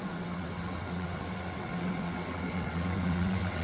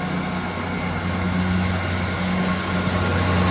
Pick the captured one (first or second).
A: second